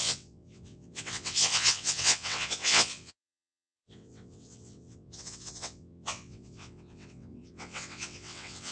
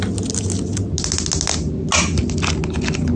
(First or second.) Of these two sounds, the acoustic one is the second